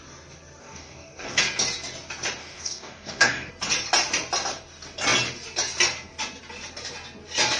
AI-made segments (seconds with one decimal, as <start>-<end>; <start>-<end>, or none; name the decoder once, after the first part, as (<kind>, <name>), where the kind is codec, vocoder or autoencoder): 0.6-1.4 (codec, DAC); 2.4-3.5